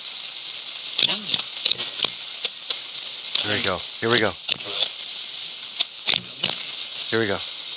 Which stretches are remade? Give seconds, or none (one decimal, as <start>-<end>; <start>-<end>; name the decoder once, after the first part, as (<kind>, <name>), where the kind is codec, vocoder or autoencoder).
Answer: 6.9-7.8 (vocoder, Vocos)